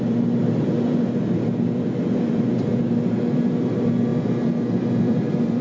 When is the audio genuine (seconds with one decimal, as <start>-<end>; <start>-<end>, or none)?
none